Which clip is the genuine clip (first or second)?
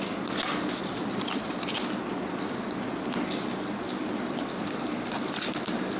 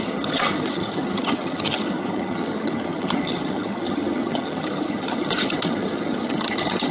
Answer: first